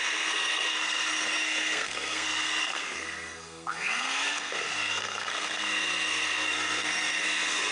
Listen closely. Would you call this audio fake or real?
fake